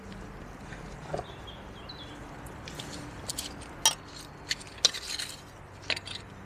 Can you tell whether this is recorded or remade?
recorded